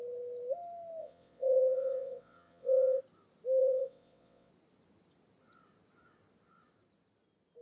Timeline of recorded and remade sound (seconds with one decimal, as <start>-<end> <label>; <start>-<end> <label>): 0.0-1.0 recorded; 1.0-3.0 remade; 3.0-3.6 recorded; 3.6-4.5 remade; 4.5-7.6 recorded

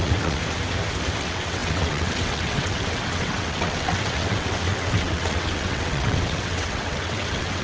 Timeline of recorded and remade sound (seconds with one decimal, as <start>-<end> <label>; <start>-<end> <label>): 0.0-0.4 remade; 0.4-1.2 recorded; 1.2-7.6 remade

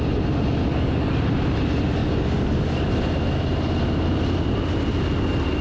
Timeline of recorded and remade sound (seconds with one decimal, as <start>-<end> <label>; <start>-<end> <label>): 0.0-0.7 recorded; 0.7-1.2 remade; 1.2-2.0 recorded; 2.0-2.9 remade; 2.9-5.6 recorded

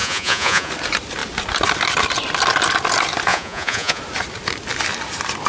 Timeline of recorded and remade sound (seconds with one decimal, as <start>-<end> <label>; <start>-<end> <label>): 0.0-0.7 remade; 0.7-3.3 recorded; 3.3-4.0 remade; 4.0-5.5 recorded

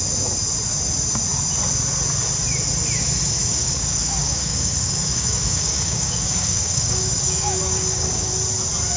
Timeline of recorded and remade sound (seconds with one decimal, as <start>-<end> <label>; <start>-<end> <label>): 0.0-3.5 recorded; 3.5-8.3 remade; 8.3-9.0 recorded

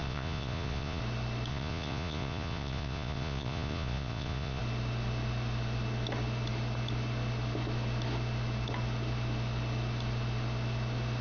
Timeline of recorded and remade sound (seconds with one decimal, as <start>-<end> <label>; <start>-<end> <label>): 0.0-1.0 remade; 1.0-1.5 recorded; 1.5-4.6 remade; 4.6-11.2 recorded